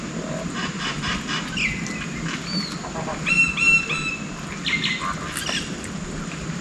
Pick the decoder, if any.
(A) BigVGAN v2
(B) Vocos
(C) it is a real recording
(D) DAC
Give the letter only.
C